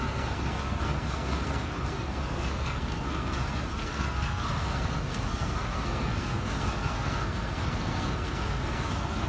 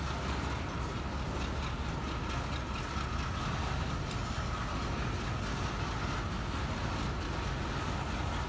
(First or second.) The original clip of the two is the second